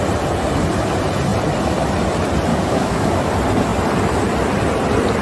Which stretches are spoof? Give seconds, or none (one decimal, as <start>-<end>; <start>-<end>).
2.5-3.3